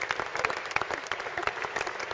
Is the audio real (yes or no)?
yes